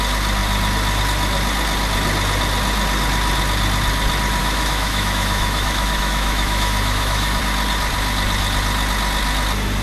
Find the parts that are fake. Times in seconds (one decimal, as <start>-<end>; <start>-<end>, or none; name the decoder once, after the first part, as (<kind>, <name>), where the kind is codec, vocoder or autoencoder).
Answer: 4.4-7.4 (autoencoder, DAC-VAE)